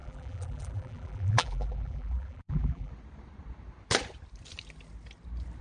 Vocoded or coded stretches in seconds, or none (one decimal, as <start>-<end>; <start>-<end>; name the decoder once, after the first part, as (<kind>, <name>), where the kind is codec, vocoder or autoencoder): 0.0-2.9 (vocoder, BigVGAN v2)